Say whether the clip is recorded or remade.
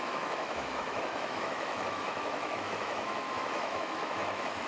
remade